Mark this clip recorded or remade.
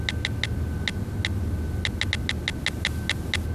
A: recorded